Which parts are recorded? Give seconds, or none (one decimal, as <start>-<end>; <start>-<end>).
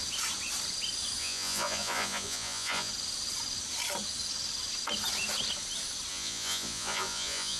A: 0.0-1.2; 2.9-6.1